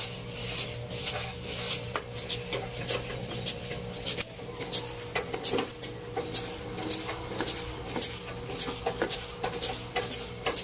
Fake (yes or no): no